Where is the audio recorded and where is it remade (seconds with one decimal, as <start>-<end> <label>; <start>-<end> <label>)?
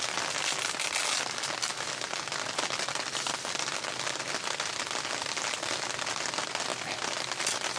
0.0-7.8 recorded